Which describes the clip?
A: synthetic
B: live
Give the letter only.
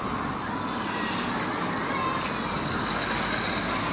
B